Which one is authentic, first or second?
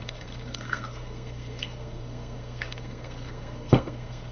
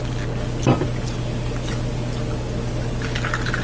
second